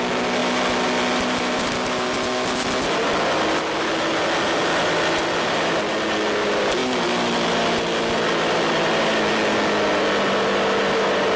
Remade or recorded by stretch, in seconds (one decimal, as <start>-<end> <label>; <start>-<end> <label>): 0.0-11.4 recorded

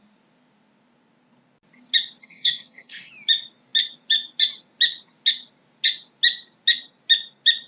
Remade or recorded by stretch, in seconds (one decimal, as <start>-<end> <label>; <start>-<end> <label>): 0.0-2.2 recorded; 2.2-3.1 remade; 3.1-7.7 recorded